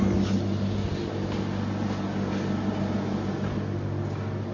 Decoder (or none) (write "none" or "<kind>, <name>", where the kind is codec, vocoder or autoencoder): none